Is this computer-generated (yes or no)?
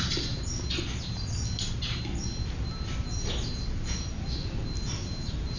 no